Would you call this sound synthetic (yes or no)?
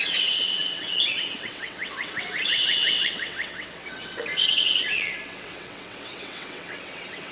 yes